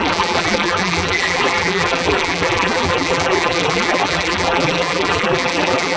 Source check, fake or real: fake